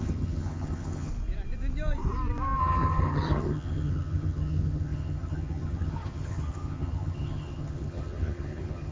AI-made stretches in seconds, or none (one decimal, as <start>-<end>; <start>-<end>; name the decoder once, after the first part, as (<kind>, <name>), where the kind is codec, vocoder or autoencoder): 0.0-1.1 (vocoder, HiFi-GAN); 2.6-8.9

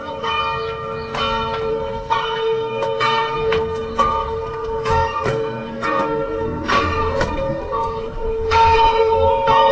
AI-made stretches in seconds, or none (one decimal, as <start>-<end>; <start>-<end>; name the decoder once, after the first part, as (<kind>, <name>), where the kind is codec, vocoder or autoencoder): 0.0-0.4 (codec, SNAC); 1.7-9.7

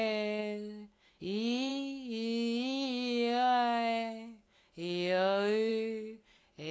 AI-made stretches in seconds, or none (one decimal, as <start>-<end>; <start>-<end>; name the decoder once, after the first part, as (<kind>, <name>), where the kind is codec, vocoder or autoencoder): 0.4-1.2 (autoencoder, DAC-VAE); 1.7-5.7